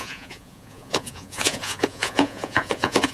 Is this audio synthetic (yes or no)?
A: yes